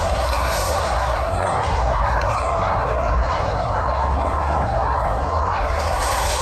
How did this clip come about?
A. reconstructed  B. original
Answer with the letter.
A